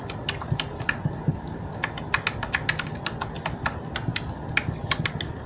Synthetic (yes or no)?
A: no